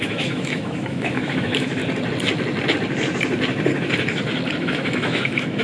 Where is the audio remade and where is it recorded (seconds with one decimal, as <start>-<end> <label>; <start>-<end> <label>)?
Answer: 0.0-1.8 remade; 1.8-4.6 recorded; 4.6-5.6 remade